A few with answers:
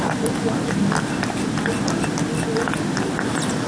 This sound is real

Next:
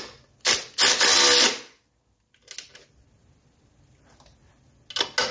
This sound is real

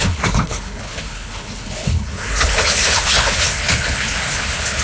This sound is fake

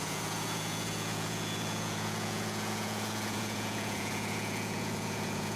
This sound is fake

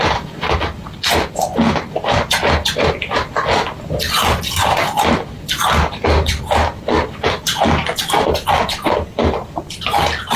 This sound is real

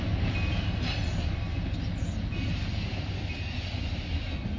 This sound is real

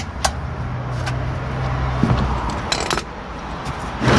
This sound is real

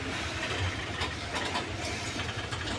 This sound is real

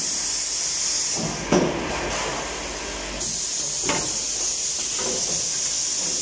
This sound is real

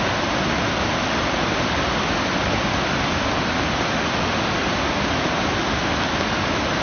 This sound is real